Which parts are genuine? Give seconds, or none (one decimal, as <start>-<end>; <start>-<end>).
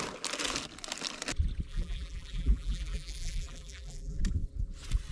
0.0-1.7; 4.2-5.1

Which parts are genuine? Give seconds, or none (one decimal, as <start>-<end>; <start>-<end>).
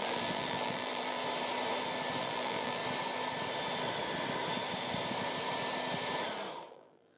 1.2-2.2; 2.8-6.7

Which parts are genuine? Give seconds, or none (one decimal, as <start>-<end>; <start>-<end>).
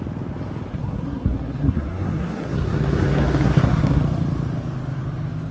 0.0-0.7; 4.0-5.5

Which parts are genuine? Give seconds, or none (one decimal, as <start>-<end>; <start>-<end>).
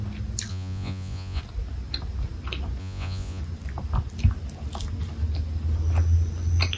0.0-0.5; 1.4-2.8; 3.4-6.8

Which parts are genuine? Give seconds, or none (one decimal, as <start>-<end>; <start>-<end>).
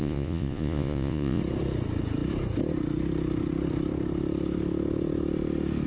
1.4-5.9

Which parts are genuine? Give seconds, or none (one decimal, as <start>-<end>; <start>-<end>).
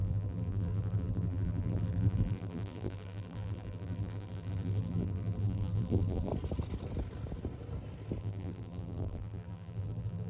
6.3-8.2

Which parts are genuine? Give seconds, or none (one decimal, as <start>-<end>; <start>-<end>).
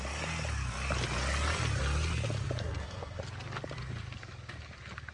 0.0-2.6; 3.2-5.1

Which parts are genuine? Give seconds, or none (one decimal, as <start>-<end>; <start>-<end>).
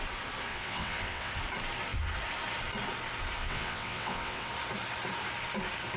0.0-0.5; 1.3-3.4; 4.5-6.0